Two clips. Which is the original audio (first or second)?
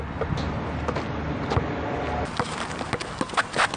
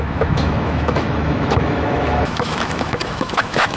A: first